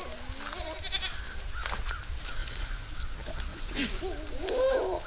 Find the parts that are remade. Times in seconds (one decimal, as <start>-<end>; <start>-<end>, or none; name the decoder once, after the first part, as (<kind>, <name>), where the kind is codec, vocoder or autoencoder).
2.4-2.9 (vocoder, Vocos); 3.5-4.0